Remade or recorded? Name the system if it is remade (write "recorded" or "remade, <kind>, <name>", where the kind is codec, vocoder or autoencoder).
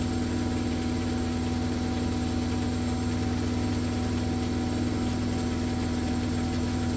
recorded